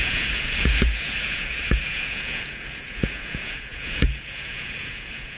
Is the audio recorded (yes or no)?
no